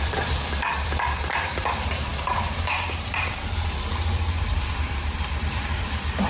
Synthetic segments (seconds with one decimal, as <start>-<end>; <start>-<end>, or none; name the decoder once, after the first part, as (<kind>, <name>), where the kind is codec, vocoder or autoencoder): 0.0-6.3 (vocoder, BigVGAN v2)